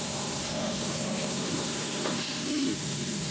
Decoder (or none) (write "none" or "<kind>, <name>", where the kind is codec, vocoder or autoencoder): codec, SNAC